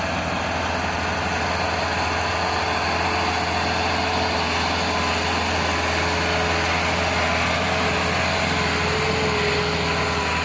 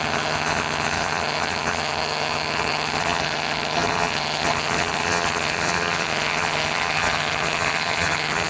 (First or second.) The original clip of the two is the first